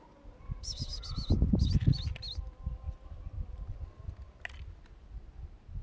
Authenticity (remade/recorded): recorded